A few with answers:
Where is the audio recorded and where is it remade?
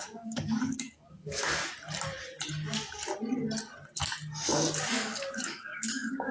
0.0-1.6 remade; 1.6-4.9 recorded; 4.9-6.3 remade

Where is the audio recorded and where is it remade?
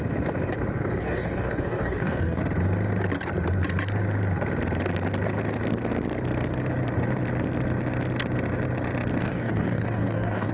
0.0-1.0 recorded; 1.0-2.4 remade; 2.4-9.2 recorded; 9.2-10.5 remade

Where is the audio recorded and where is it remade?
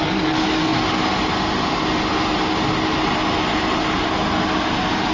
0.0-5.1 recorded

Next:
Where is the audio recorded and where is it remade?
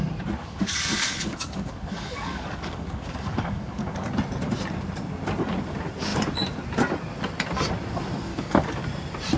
0.0-0.4 recorded; 0.4-4.1 remade; 4.1-8.3 recorded; 8.3-8.8 remade; 8.8-9.4 recorded